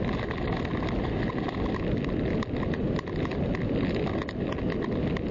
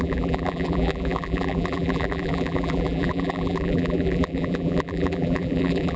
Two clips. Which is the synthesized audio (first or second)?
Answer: second